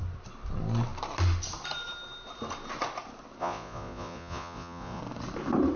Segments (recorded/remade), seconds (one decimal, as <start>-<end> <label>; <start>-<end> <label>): 0.0-3.4 recorded; 3.4-5.0 remade; 5.0-5.8 recorded